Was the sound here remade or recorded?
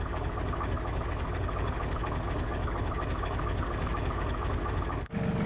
remade